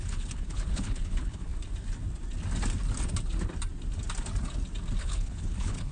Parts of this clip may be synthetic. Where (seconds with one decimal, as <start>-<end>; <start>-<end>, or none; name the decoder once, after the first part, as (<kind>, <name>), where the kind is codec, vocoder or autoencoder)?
0.0-1.5 (codec, HILCodec); 5.0-5.9